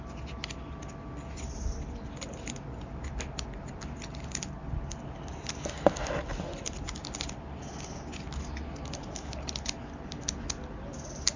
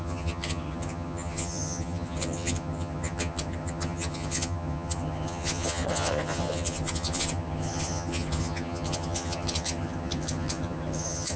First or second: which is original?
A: first